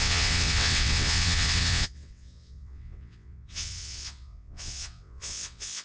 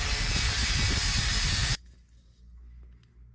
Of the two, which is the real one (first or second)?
second